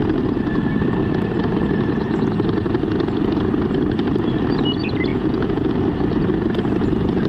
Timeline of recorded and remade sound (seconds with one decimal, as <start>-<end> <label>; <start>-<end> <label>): 0.0-5.1 recorded; 5.1-5.7 remade; 5.7-7.3 recorded